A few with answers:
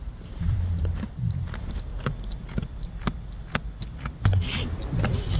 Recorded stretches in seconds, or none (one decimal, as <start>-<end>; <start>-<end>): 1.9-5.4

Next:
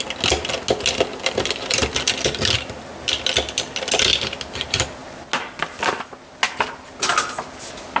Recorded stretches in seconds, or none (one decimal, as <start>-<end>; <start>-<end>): 0.0-1.1; 1.9-8.0

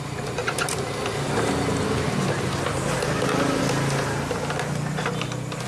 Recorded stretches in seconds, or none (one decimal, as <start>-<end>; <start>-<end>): 0.0-5.7